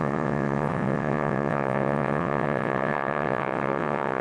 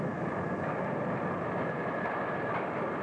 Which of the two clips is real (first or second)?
second